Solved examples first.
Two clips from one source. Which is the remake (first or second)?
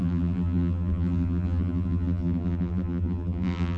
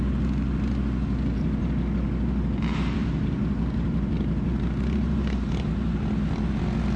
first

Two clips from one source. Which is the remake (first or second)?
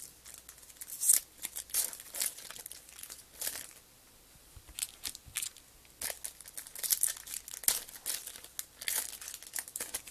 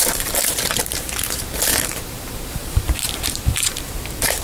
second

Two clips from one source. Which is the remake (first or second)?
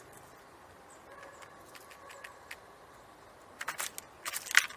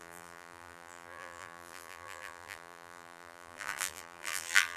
second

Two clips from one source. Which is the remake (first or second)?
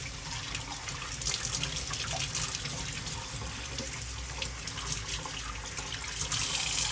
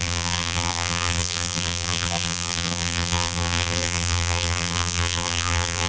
second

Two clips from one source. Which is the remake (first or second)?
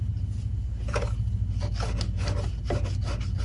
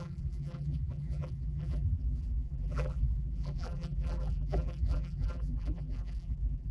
second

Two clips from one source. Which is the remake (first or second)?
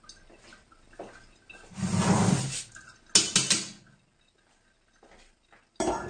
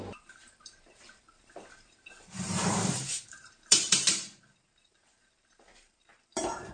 second